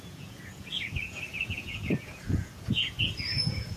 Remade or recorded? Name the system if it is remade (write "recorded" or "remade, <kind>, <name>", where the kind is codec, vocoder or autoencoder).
remade, vocoder, Vocos